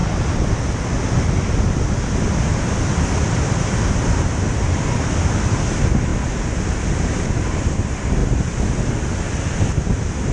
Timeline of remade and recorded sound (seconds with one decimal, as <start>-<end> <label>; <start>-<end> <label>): 0.0-10.3 recorded